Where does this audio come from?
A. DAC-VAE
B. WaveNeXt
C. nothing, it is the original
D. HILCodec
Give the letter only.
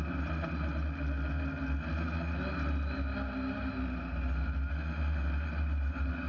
C